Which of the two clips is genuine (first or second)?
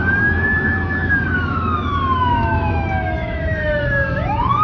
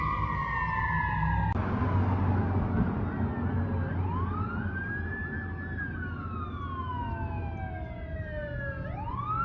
second